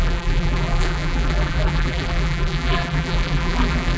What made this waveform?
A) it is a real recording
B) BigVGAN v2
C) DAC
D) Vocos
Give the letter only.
B